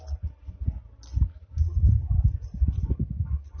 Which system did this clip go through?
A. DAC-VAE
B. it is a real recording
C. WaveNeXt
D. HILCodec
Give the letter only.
B